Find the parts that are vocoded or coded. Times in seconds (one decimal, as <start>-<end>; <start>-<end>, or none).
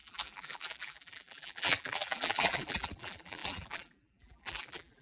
0.0-5.0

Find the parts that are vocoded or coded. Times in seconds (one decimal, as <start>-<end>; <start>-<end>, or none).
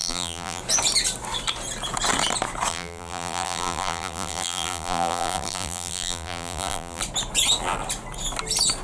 0.0-0.6; 2.7-7.0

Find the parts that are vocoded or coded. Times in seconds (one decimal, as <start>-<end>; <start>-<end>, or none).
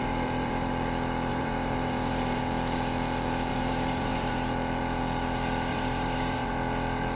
0.0-0.7; 1.3-2.4; 3.5-4.3; 5.7-6.5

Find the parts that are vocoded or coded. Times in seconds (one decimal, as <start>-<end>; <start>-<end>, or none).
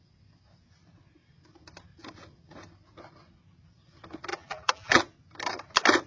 4.3-5.0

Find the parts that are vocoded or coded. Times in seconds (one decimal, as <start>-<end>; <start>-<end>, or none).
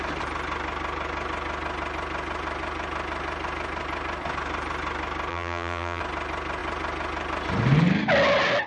5.3-6.0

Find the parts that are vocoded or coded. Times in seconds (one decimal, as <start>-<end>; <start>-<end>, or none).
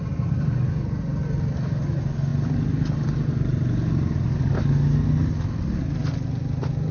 none